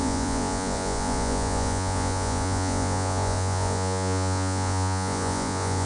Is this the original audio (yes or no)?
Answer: no